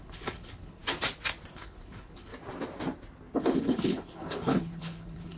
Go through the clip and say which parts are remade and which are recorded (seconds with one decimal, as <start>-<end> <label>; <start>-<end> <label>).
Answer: 0.0-0.8 remade; 0.8-1.5 recorded; 1.5-2.3 remade; 2.3-3.4 recorded; 3.4-5.4 remade